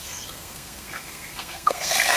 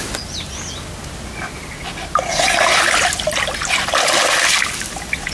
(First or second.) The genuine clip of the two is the second